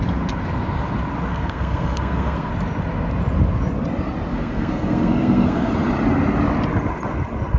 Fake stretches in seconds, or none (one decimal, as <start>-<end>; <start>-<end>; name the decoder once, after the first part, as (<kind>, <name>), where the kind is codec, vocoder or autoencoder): 1.3-2.5 (codec, SNAC); 4.3-5.7